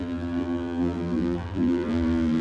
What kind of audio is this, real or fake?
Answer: fake